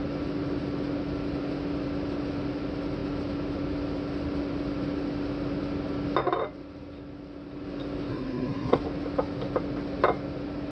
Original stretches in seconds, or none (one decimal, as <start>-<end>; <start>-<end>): 0.0-8.1; 8.8-10.7